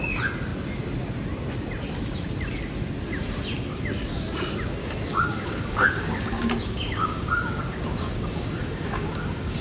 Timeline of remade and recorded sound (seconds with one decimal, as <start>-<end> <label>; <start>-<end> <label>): 0.0-4.8 recorded; 4.8-9.6 remade